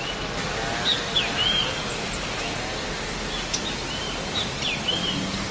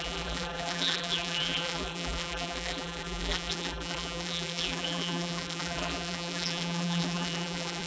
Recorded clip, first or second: first